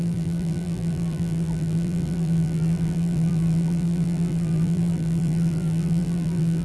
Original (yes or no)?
no